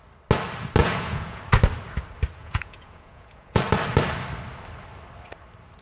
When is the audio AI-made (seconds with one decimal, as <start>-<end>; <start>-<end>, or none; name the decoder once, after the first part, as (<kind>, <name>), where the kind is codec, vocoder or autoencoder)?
0.8-1.4 (vocoder, Vocos); 2.4-3.6